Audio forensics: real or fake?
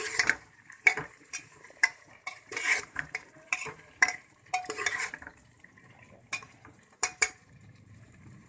fake